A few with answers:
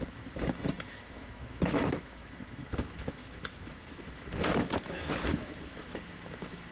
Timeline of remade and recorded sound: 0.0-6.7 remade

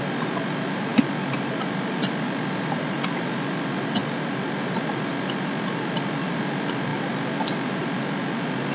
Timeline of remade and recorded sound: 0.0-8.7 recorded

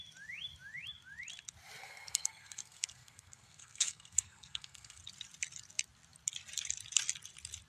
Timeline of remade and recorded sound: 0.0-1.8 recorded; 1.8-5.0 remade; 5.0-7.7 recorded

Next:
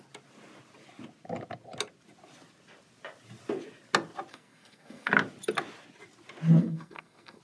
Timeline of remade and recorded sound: 0.0-4.3 recorded; 4.3-5.1 remade; 5.1-6.6 recorded; 6.6-7.4 remade

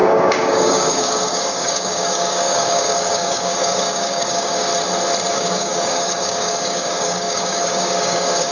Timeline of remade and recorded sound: 0.0-4.7 remade; 4.7-5.3 recorded; 5.3-8.5 remade

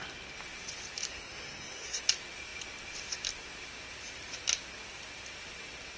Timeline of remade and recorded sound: 0.0-1.1 recorded; 1.1-2.0 remade; 2.0-6.0 recorded

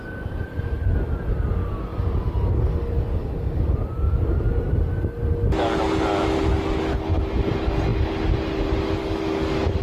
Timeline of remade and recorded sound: 0.0-9.0 recorded; 9.0-9.8 remade

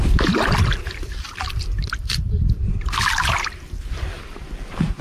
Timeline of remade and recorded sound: 0.0-2.1 remade; 2.1-5.0 recorded